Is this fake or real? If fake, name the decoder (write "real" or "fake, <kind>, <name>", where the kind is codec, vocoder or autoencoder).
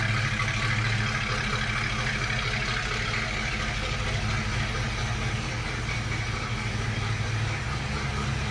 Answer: real